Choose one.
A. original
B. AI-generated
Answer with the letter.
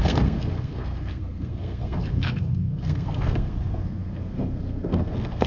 B